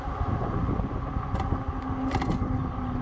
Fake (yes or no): no